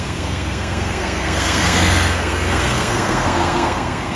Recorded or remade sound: remade